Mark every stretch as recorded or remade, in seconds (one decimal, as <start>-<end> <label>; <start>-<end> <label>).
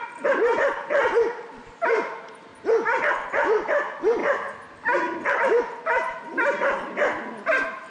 0.0-2.5 remade; 2.5-3.1 recorded; 3.1-4.2 remade; 4.2-5.6 recorded; 5.6-7.9 remade